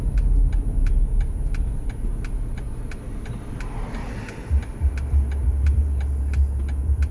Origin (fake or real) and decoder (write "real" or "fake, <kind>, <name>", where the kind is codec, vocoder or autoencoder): real